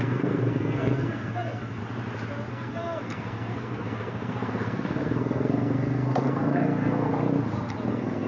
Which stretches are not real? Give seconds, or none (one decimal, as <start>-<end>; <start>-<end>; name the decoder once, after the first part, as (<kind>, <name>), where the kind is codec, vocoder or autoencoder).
0.0-1.8 (codec, SNAC); 2.5-7.1; 7.9-8.3